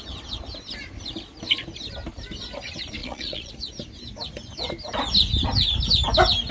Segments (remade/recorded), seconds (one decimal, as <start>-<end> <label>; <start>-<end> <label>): 0.0-3.0 recorded; 3.0-3.5 remade; 3.5-6.5 recorded